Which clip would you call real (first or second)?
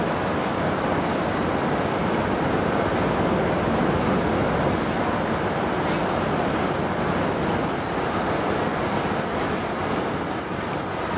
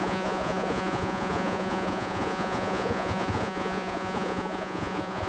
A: first